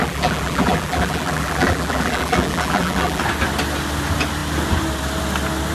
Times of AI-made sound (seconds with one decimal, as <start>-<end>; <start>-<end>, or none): 0.0-3.2